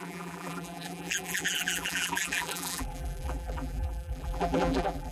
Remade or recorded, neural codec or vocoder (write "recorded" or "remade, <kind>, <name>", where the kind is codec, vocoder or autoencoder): remade, vocoder, BigVGAN v2